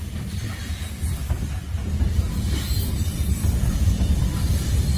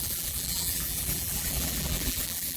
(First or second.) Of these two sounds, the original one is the first